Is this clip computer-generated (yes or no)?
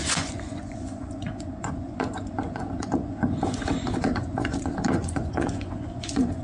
yes